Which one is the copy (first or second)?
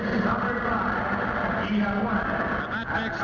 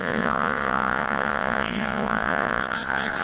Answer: second